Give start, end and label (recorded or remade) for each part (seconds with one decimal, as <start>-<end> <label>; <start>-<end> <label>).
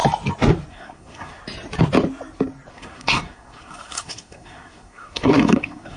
0.0-0.7 recorded; 0.7-1.4 remade; 1.4-2.7 recorded; 2.7-6.0 remade